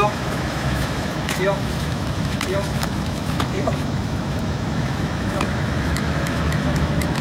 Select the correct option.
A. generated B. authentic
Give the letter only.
A